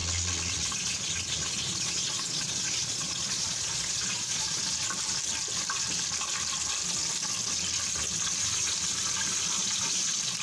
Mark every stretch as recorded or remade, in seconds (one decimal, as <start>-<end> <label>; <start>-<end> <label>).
0.0-4.6 remade; 4.6-10.4 recorded